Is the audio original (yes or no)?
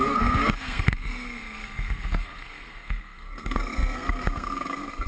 no